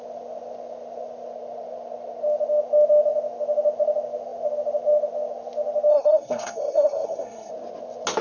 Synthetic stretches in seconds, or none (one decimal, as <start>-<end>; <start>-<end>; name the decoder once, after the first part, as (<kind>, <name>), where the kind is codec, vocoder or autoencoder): 5.9-7.5 (codec, SNAC)